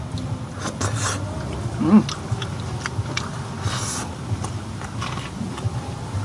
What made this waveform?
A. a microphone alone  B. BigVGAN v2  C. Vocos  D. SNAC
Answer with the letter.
A